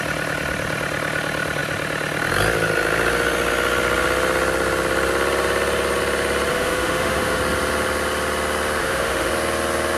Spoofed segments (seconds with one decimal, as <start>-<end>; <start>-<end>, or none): 6.5-7.4; 8.8-9.3